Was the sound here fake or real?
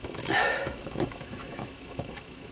fake